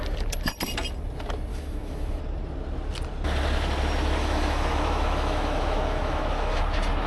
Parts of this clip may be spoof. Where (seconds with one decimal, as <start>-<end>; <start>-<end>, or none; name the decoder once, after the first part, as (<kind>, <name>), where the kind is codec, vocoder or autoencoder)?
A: 1.5-2.2 (autoencoder, DAC-VAE); 4.2-6.6